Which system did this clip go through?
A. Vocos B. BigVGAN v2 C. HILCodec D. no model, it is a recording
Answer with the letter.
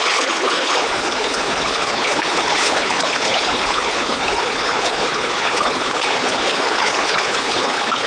C